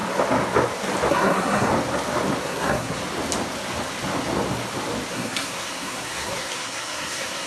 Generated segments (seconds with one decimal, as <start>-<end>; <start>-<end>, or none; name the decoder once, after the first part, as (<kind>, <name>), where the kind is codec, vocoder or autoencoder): 1.1-1.7 (codec, SNAC); 2.4-3.0; 5.1-7.5